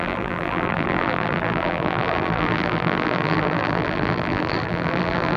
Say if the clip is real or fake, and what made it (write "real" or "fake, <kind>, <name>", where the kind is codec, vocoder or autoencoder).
fake, vocoder, BigVGAN v2